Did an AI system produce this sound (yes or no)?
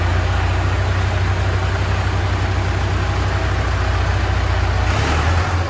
no